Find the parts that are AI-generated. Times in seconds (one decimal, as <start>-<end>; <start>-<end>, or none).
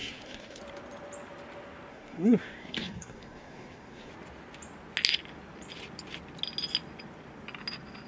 0.0-0.6; 1.9-4.1